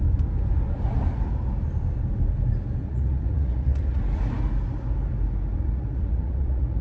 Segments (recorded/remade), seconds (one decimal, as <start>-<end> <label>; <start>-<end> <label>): 0.0-2.8 recorded; 2.8-4.0 remade; 4.0-5.6 recorded; 5.6-6.8 remade